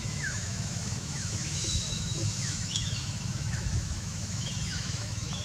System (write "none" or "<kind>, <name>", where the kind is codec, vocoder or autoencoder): autoencoder, DAC-VAE